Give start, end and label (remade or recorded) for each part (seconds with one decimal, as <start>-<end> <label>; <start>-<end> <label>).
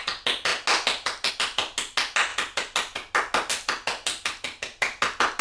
0.0-5.4 recorded